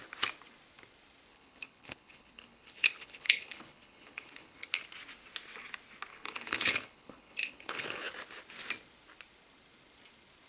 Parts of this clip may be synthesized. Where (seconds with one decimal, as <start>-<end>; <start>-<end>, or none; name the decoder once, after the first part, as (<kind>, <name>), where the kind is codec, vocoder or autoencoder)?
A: 1.3-4.7 (codec, HILCodec); 6.1-8.1